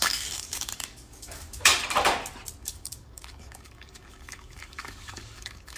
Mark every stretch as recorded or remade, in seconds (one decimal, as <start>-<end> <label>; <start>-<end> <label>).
0.0-1.7 remade; 1.7-2.6 recorded; 2.6-5.8 remade